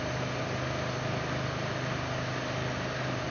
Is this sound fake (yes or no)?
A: no